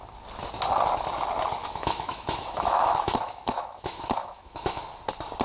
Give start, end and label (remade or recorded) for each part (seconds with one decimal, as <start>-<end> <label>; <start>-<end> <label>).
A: 0.0-1.6 recorded; 1.6-4.8 remade; 4.8-5.4 recorded